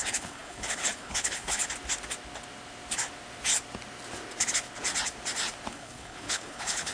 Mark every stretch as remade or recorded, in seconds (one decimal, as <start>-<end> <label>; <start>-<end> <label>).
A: 0.0-1.6 remade; 1.6-5.7 recorded; 5.7-6.9 remade